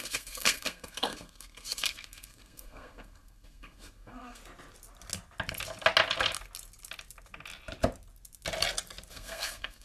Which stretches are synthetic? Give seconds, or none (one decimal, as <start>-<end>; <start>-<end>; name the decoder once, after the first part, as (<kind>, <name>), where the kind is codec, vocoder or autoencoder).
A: 0.0-4.4 (codec, SNAC); 9.1-9.8